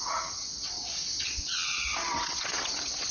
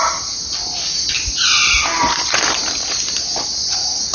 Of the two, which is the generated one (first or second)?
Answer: first